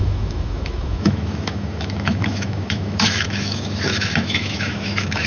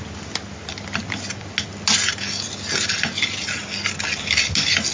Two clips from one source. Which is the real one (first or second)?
second